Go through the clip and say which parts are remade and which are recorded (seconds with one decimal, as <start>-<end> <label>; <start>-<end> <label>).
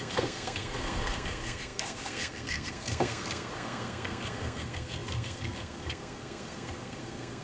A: 0.0-7.4 remade